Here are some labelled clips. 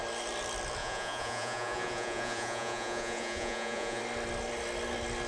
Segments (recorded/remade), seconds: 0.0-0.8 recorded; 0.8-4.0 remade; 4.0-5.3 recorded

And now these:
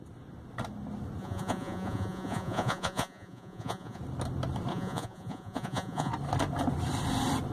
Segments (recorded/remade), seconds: 0.0-1.2 recorded; 1.2-4.0 remade; 4.0-4.7 recorded; 4.7-6.1 remade; 6.1-7.5 recorded

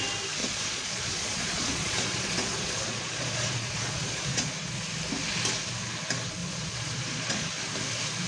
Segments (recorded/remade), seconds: 0.0-0.4 recorded; 0.4-4.8 remade; 4.8-6.4 recorded; 6.4-7.5 remade; 7.5-8.3 recorded

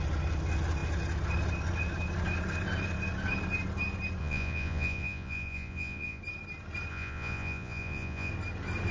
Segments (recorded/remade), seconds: 0.0-4.2 recorded; 4.2-6.2 remade; 6.2-6.9 recorded; 6.9-8.3 remade; 8.3-8.9 recorded

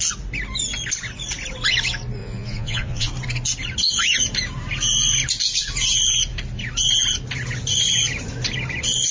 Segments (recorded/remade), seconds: 0.0-2.2 recorded; 2.2-3.1 remade; 3.1-9.1 recorded